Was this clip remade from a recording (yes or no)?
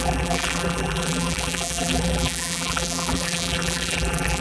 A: yes